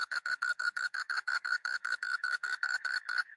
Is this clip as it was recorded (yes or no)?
no